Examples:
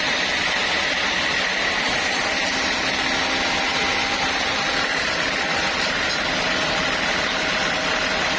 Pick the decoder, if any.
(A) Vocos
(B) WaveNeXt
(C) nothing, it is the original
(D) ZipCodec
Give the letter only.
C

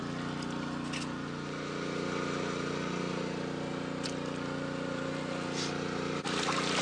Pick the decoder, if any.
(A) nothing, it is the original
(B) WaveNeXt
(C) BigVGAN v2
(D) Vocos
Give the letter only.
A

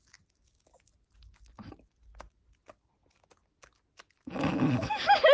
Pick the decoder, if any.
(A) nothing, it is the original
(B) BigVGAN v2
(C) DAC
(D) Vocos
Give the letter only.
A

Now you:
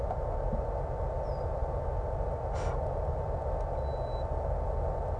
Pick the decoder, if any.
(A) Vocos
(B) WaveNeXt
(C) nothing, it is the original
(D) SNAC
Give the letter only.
C